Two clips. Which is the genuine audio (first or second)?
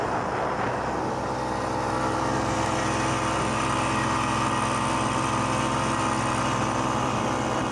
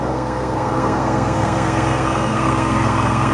first